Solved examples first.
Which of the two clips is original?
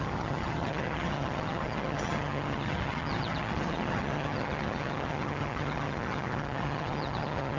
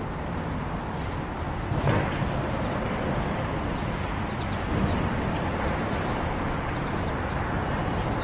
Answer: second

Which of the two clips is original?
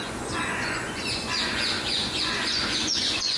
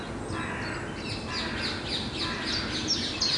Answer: second